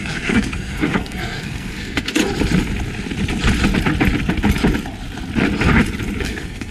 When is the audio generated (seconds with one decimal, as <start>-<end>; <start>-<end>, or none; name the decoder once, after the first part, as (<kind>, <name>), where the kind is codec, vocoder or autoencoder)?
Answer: 0.0-2.2 (codec, SNAC); 6.2-6.7